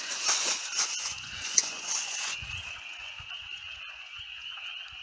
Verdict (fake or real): fake